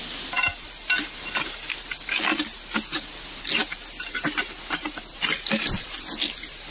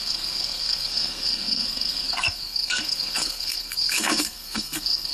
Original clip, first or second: first